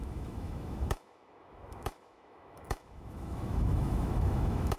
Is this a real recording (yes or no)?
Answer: no